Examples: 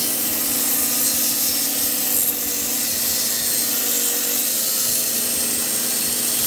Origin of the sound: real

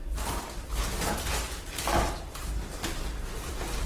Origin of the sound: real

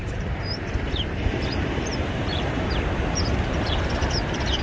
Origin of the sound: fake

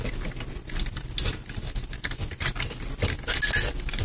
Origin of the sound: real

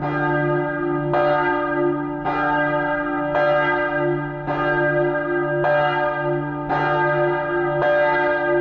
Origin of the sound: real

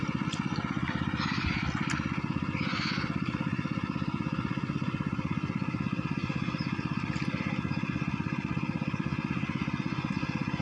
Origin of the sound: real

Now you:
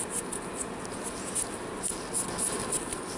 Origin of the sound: real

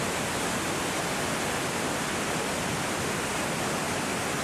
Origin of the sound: real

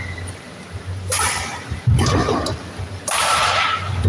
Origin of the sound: fake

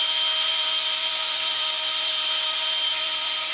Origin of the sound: fake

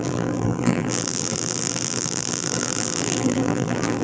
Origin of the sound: fake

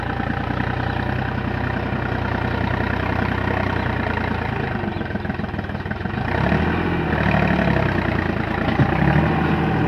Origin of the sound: real